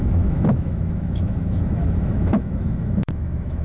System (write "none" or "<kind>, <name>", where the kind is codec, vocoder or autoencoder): autoencoder, DAC-VAE